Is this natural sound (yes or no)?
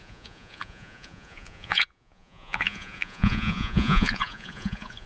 no